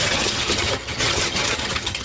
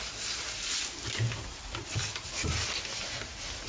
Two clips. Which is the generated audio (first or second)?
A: first